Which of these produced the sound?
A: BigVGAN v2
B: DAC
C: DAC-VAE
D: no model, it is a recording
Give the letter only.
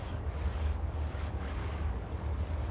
B